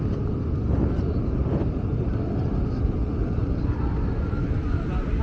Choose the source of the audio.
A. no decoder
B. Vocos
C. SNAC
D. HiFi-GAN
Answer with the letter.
A